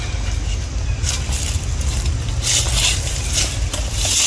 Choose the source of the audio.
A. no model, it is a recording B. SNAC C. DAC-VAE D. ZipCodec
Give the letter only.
A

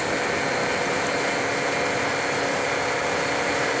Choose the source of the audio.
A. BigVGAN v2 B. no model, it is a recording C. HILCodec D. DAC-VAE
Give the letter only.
B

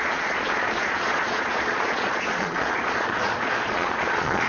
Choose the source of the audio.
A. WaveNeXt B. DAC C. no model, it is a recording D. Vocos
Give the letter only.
D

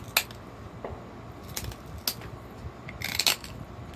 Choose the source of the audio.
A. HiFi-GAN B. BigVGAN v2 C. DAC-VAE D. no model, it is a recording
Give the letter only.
D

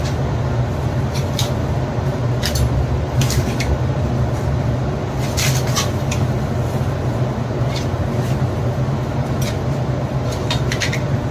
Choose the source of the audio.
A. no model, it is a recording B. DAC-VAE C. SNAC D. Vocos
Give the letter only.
A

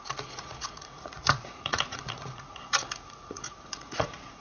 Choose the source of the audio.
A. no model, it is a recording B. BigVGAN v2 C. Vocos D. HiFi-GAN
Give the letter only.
C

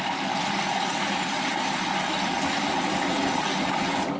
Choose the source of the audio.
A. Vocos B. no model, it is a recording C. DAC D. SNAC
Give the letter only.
B